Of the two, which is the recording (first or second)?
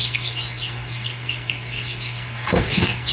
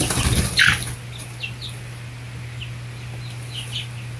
second